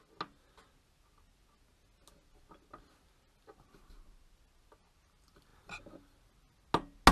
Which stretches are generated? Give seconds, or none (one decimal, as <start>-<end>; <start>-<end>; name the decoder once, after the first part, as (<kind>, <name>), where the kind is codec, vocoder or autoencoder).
none